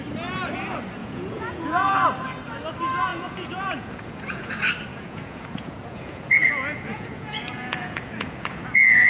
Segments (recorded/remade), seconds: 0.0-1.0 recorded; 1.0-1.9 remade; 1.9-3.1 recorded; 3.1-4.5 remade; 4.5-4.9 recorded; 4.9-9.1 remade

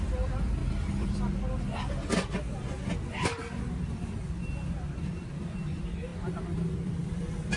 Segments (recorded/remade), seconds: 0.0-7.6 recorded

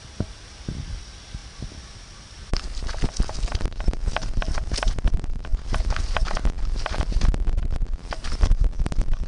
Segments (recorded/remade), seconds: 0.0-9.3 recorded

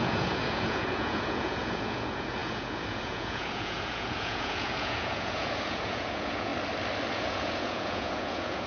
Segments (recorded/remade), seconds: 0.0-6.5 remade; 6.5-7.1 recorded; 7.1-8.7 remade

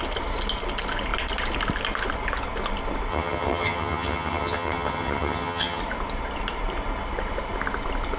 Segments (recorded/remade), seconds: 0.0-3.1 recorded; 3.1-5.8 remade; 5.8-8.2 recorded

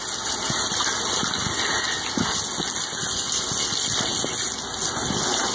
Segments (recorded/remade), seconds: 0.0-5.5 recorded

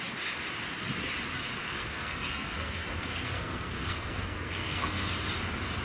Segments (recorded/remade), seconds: 0.0-1.6 recorded; 1.6-5.1 remade; 5.1-5.8 recorded

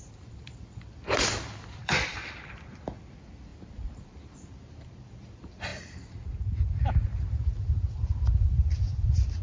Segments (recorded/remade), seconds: 0.0-3.5 remade; 3.5-4.0 recorded; 4.0-5.7 remade; 5.7-7.6 recorded; 7.6-9.4 remade